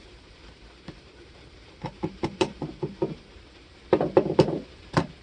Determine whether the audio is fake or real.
fake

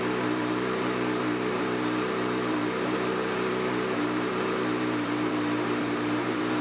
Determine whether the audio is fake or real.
fake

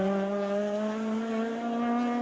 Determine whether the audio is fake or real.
real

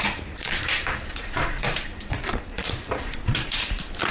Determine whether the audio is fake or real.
fake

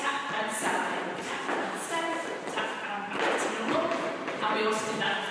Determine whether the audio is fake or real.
real